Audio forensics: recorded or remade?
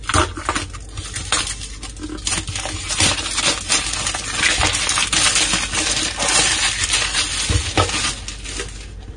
recorded